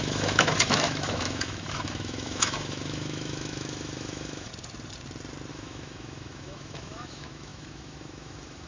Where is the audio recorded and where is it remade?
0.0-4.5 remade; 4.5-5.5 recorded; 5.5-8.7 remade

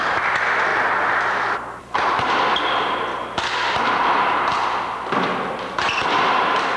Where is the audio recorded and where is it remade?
0.0-6.8 recorded

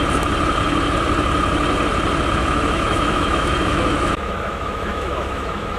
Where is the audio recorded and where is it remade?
0.0-2.4 recorded; 2.4-5.8 remade

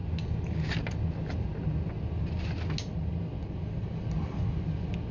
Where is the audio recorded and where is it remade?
0.0-5.1 recorded

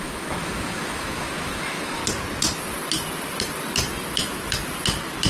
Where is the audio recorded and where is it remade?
0.0-2.0 remade; 2.0-5.3 recorded